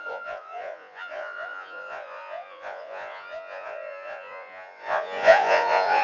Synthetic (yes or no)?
yes